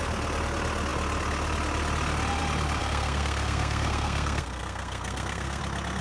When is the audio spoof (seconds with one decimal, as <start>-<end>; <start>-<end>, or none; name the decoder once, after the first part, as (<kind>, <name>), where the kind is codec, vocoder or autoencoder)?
2.8-5.6 (codec, SNAC)